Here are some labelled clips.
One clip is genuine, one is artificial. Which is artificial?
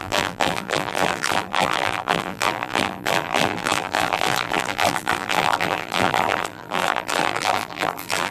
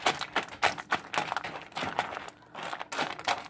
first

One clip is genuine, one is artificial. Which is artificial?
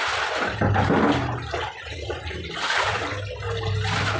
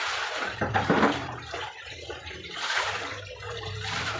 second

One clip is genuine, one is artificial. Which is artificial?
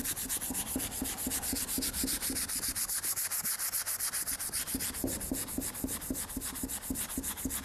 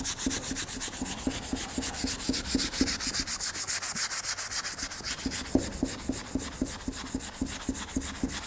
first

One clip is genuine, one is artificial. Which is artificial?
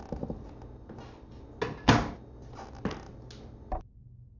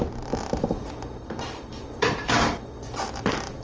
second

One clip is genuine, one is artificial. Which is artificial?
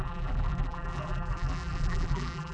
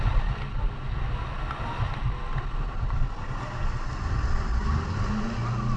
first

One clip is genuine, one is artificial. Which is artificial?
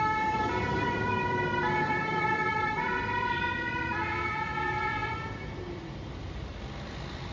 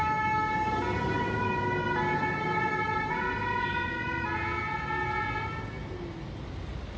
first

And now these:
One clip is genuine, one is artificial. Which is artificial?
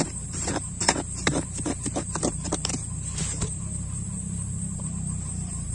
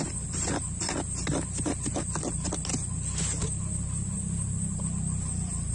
first